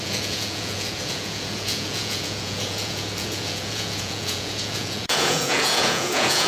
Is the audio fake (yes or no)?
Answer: yes